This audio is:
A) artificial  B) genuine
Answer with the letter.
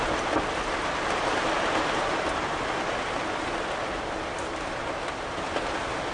B